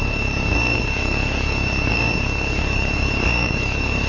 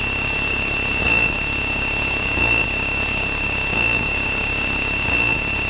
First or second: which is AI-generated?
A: first